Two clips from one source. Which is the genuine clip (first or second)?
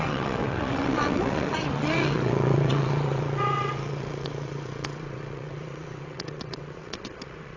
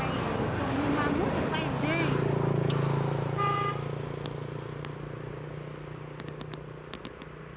second